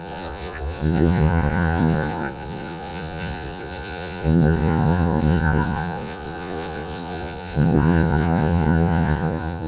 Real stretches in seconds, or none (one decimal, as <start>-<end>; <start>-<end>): none